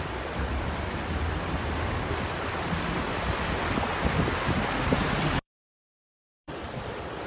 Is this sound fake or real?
fake